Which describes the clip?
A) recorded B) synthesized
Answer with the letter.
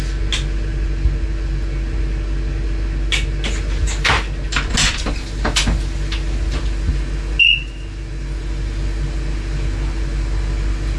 A